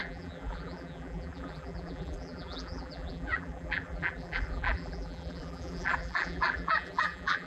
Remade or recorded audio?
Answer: remade